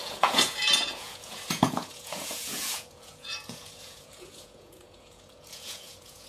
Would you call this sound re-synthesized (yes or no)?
yes